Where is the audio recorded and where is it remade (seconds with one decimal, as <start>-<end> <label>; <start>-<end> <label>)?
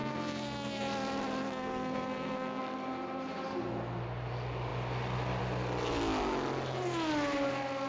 0.0-0.8 remade; 0.8-1.4 recorded; 1.4-2.6 remade; 2.6-7.9 recorded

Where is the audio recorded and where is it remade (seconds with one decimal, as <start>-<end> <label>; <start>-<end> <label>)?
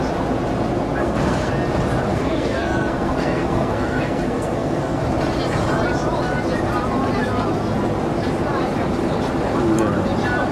0.0-1.0 recorded; 1.0-1.5 remade; 1.5-2.1 recorded; 2.1-5.0 remade; 5.0-10.5 recorded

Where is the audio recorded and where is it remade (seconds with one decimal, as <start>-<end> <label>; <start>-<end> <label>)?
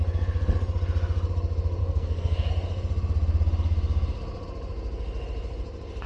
0.0-1.8 recorded; 1.8-2.5 remade; 2.5-6.1 recorded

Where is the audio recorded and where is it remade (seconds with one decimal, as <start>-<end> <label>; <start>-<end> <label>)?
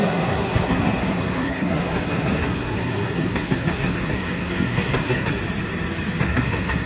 0.0-5.4 remade; 5.4-6.2 recorded; 6.2-6.9 remade